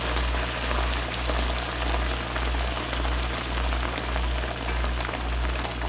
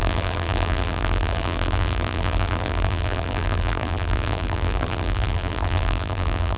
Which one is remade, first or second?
second